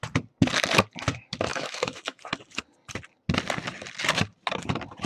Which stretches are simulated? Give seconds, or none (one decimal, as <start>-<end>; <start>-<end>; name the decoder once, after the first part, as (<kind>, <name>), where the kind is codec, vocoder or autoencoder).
1.5-2.2 (autoencoder, DAC-VAE)